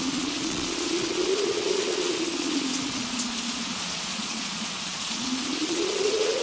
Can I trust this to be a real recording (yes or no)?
no